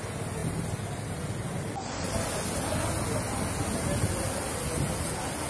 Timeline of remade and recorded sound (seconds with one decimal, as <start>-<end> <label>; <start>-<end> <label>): 0.0-5.5 recorded